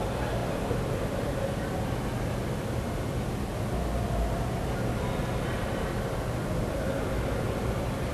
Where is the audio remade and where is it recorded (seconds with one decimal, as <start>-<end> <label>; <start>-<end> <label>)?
0.0-0.4 remade; 0.4-2.4 recorded; 2.4-3.5 remade; 3.5-8.1 recorded